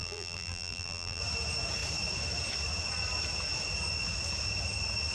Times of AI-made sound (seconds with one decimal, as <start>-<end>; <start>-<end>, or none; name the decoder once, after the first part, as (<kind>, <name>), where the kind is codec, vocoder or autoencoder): 0.0-1.2 (vocoder, BigVGAN v2)